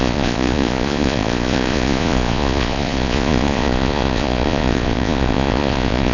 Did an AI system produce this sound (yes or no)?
yes